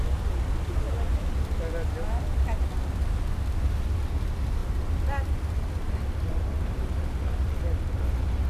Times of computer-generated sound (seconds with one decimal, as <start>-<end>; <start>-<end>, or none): none